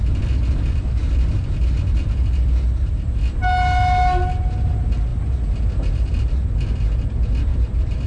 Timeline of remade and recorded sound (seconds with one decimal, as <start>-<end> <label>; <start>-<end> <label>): 0.0-7.5 recorded; 7.5-8.1 remade